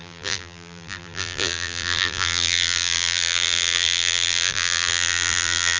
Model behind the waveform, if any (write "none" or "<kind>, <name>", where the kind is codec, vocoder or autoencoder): vocoder, BigVGAN v2